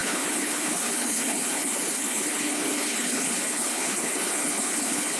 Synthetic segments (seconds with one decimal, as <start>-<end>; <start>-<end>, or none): 0.0-5.2